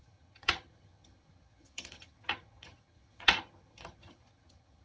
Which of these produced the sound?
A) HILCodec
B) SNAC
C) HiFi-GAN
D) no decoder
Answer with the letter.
C